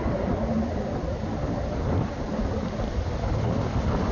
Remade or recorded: recorded